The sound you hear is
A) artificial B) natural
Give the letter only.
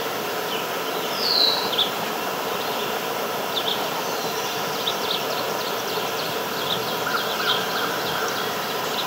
B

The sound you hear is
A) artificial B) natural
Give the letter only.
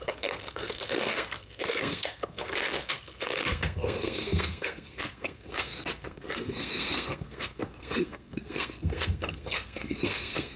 A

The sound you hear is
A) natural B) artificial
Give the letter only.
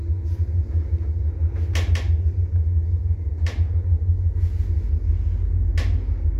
A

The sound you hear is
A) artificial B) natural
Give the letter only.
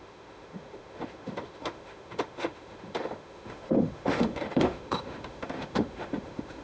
A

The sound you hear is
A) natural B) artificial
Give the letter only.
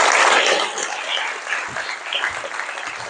A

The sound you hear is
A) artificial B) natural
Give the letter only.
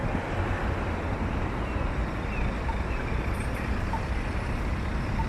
B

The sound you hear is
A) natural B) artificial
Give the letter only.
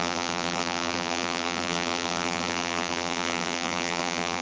B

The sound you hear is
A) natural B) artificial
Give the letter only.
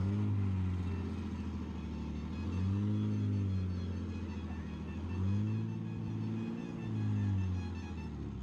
A